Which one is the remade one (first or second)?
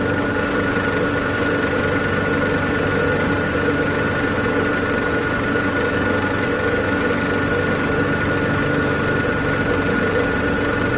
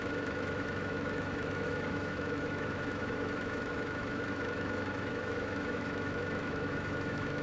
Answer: second